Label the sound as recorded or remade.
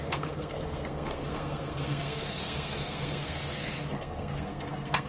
remade